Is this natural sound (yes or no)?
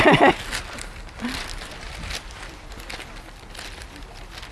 yes